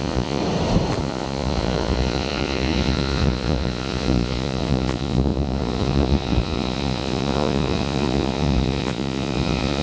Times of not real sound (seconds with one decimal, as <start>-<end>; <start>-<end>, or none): 0.0-0.4; 1.0-9.8